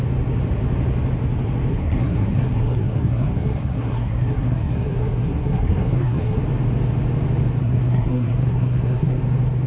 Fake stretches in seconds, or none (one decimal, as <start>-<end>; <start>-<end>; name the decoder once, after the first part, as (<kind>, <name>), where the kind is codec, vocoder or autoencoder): 1.7-6.4 (codec, SNAC); 7.6-9.2